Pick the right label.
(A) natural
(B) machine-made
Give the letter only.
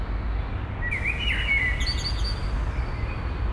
A